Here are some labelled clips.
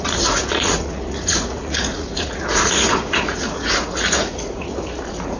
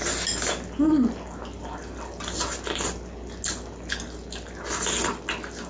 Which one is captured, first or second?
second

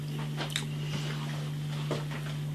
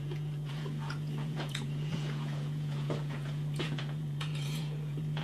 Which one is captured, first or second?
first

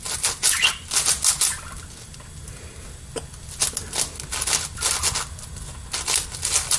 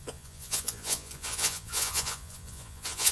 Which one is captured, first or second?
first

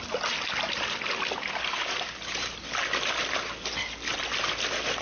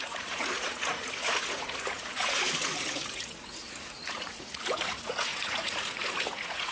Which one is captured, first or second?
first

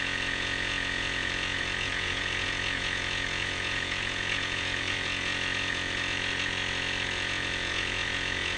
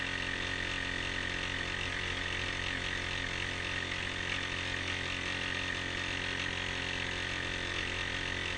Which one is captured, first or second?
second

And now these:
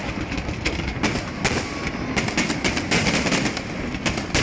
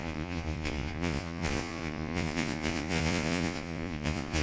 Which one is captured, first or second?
first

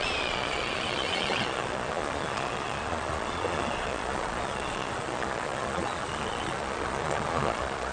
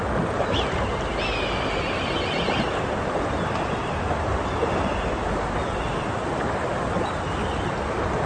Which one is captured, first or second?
second